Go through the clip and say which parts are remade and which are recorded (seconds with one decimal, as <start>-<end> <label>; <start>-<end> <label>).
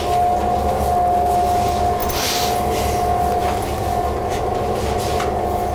0.0-5.7 recorded